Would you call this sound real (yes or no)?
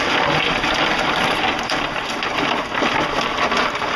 yes